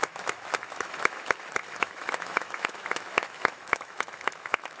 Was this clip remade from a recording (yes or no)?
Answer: yes